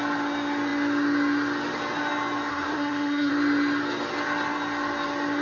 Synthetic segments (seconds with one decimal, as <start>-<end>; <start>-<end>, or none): 2.5-3.3